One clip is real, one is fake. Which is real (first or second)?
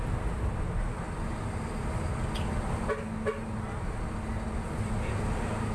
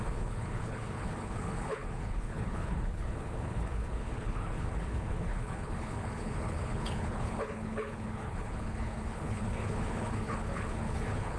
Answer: first